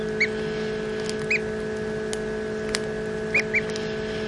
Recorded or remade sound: recorded